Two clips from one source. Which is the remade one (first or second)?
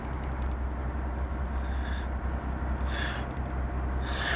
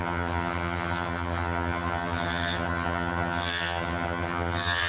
second